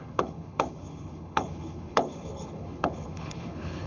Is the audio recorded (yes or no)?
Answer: no